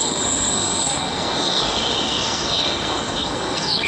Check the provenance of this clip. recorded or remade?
remade